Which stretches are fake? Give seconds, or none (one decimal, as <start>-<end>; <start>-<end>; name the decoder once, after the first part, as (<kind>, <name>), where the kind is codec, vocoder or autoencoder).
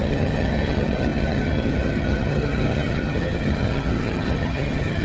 0.0-5.0 (vocoder, HiFi-GAN)